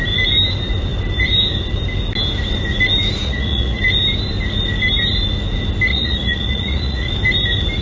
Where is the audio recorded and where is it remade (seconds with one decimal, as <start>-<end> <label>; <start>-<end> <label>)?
0.0-3.2 recorded; 3.2-3.8 remade; 3.8-5.9 recorded; 5.9-7.1 remade; 7.1-7.8 recorded